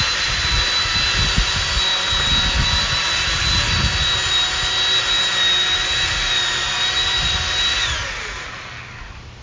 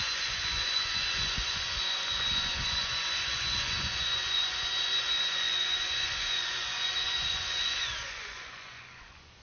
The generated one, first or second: second